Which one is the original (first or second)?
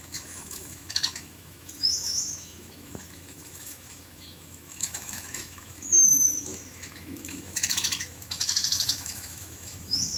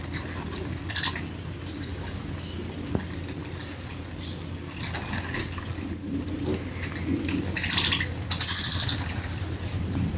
second